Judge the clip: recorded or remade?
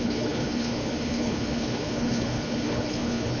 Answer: remade